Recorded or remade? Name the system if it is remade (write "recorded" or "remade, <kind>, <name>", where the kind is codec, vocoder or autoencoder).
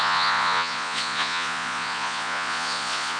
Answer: remade, vocoder, Vocos